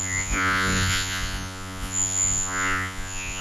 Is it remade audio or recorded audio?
remade